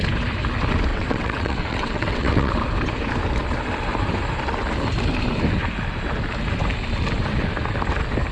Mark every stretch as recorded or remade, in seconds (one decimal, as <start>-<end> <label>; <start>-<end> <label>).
0.0-0.9 recorded; 0.9-2.5 remade; 2.5-8.3 recorded